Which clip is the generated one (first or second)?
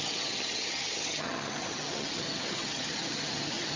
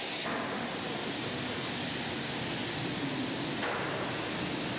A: first